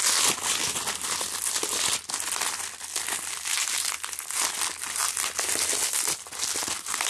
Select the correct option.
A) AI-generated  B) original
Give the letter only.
B